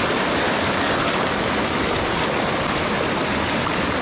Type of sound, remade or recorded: recorded